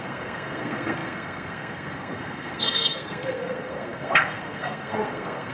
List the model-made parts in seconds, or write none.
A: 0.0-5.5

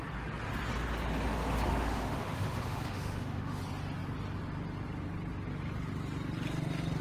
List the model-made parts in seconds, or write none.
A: 1.7-3.6

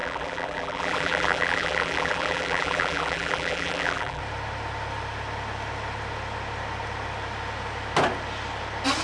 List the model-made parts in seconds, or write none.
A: 0.0-4.2

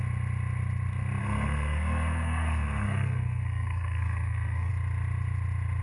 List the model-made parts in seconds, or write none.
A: 1.2-4.7

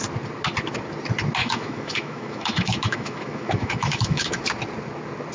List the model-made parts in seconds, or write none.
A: 1.4-4.4

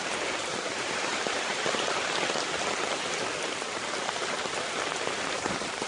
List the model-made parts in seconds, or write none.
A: 0.0-5.9

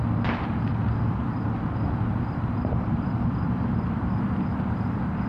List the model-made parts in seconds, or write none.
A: 2.1-5.3

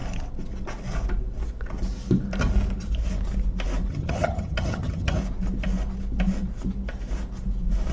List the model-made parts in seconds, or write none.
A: 3.9-5.2